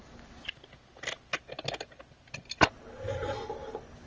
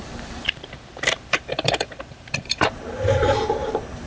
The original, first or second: first